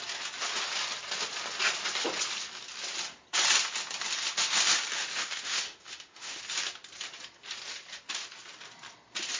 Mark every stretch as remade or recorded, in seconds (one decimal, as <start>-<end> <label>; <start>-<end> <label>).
0.0-5.0 recorded; 5.0-6.4 remade; 6.4-9.4 recorded